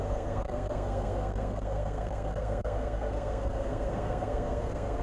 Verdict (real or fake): fake